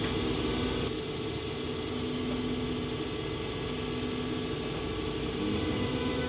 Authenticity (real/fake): real